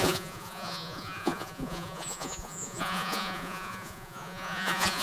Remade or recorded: remade